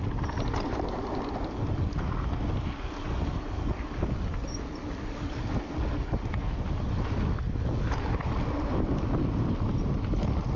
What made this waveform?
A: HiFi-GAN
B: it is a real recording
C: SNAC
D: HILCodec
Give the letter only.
B